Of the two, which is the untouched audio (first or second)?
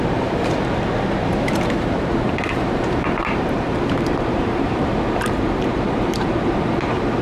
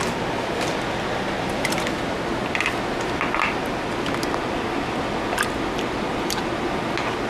second